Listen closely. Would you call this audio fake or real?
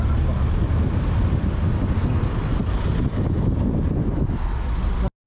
real